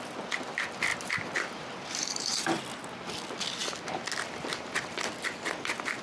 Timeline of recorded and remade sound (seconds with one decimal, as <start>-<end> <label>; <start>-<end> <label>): 0.0-0.9 recorded; 0.9-2.6 remade; 2.6-6.0 recorded